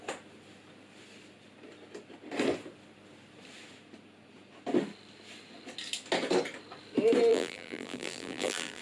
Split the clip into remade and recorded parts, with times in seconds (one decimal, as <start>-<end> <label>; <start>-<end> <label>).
0.0-7.3 recorded; 7.3-8.8 remade